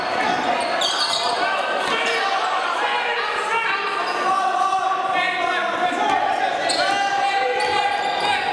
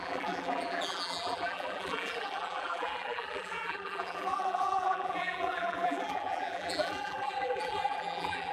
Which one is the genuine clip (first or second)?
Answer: first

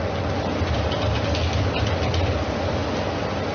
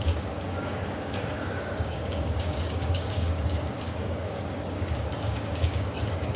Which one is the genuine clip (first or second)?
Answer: first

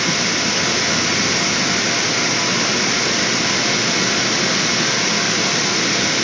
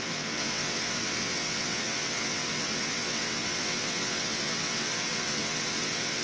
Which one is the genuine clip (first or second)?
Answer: first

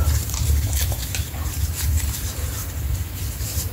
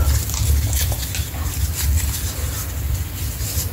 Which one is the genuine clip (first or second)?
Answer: second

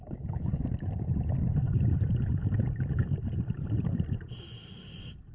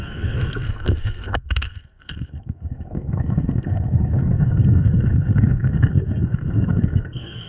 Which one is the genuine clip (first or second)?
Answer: first